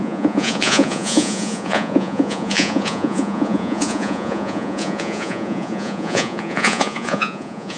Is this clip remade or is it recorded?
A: remade